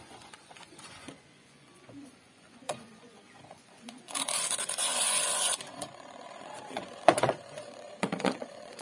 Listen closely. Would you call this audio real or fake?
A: fake